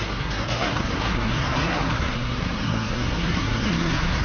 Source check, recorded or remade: remade